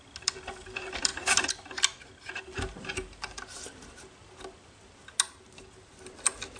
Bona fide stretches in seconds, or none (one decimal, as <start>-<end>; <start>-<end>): 0.0-6.6